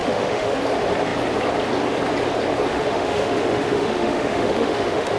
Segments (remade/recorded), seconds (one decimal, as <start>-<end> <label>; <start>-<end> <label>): 0.0-0.6 remade; 0.6-2.7 recorded; 2.7-5.2 remade

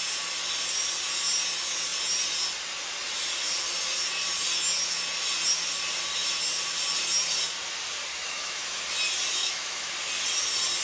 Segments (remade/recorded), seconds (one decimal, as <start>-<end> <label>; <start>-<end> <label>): 0.0-8.1 recorded; 8.1-8.8 remade; 8.8-9.4 recorded; 9.4-9.9 remade; 9.9-10.8 recorded

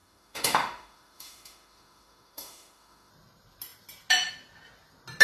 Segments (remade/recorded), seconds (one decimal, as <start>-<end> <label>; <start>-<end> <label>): 0.0-3.1 remade; 3.1-5.2 recorded

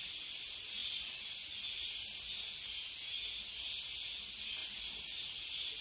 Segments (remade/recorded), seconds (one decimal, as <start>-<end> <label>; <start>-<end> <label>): 0.0-5.8 recorded

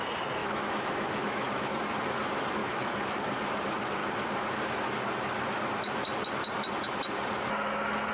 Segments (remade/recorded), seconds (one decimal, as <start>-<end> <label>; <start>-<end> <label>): 0.0-0.4 recorded; 0.4-1.7 remade; 1.7-2.6 recorded; 2.6-3.2 remade; 3.2-8.1 recorded